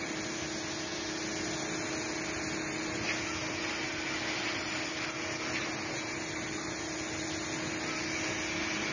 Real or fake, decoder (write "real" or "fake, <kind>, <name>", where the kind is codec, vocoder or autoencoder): real